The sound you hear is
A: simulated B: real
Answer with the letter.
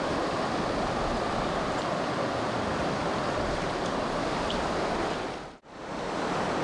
B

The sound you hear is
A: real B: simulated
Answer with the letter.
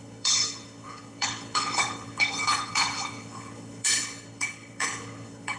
B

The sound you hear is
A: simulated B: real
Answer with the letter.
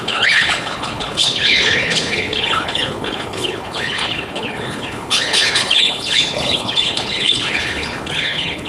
A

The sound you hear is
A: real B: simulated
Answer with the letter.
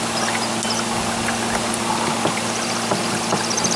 A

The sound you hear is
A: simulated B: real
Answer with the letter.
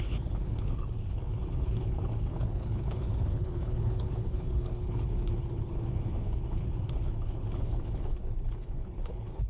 A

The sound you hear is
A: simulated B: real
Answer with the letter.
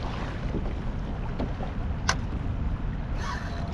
B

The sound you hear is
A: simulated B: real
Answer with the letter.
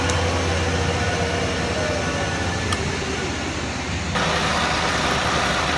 B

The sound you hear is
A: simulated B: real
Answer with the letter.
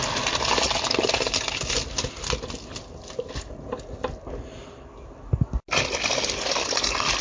B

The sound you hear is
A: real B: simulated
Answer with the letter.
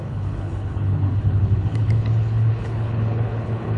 B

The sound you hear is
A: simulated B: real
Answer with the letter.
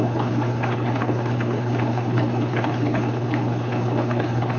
A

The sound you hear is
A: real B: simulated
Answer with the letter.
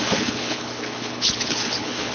B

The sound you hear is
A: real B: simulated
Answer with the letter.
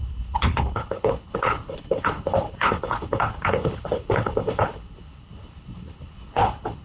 B